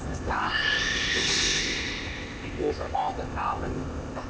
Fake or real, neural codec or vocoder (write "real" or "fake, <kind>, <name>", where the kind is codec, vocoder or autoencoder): fake, codec, ZipCodec